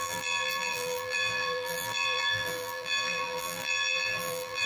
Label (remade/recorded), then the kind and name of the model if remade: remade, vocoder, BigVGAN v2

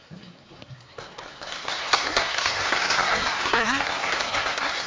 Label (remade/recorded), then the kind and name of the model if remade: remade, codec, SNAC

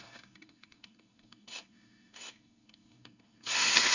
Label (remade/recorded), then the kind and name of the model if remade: remade, codec, SNAC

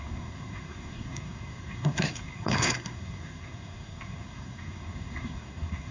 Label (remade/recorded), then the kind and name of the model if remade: remade, codec, SNAC